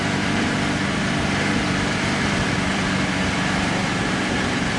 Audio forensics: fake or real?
fake